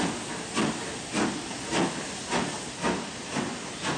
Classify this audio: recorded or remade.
recorded